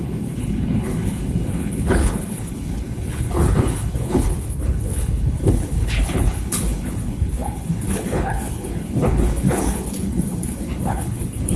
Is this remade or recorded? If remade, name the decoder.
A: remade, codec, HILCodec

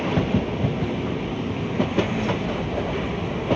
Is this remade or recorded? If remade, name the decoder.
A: recorded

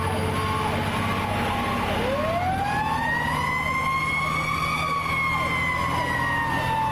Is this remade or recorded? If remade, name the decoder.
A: recorded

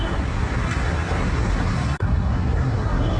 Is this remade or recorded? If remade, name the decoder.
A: remade, codec, SNAC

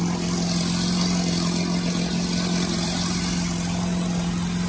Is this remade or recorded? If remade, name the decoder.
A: recorded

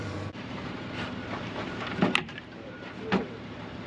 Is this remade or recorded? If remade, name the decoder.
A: remade, vocoder, BigVGAN v2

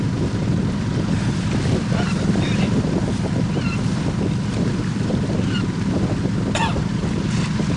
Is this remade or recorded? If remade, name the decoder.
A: remade, vocoder, BigVGAN v2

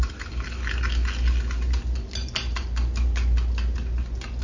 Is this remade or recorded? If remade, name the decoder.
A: recorded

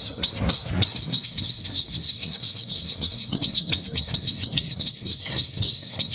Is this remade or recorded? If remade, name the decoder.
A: remade, codec, SNAC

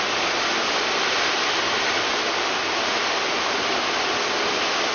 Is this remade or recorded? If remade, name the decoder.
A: recorded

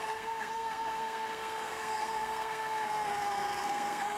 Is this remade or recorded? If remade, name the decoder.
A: remade, codec, SNAC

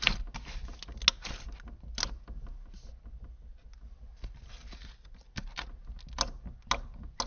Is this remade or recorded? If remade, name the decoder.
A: recorded